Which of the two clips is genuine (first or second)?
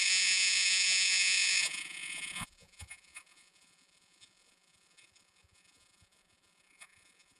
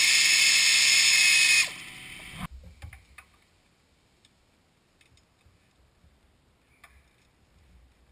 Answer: second